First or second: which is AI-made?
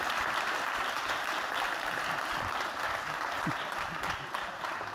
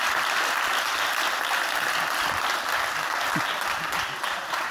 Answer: first